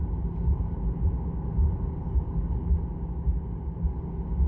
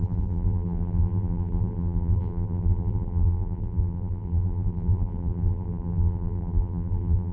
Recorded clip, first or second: first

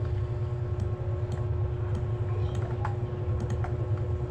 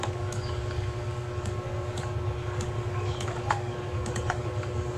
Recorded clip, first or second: first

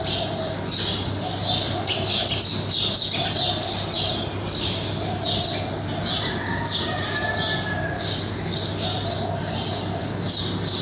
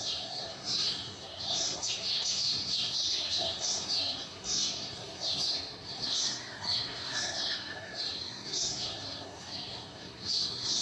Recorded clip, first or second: first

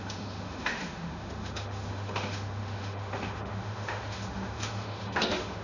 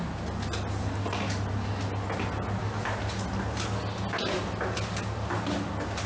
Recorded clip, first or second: second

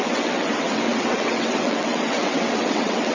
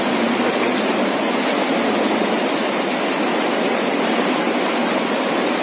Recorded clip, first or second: second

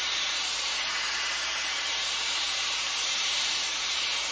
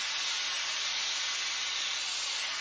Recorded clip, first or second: second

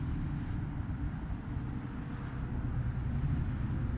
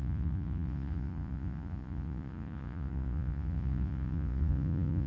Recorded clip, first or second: first